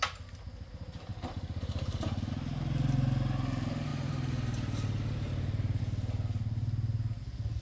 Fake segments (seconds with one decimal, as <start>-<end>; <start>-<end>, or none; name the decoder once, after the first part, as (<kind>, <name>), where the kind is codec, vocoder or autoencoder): 1.1-2.3 (vocoder, BigVGAN v2); 3.9-5.8